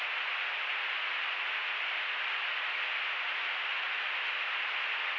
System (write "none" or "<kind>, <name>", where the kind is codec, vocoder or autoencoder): none